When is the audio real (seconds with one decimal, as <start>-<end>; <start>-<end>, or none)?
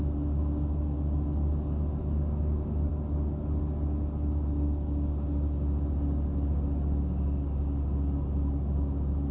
0.0-9.3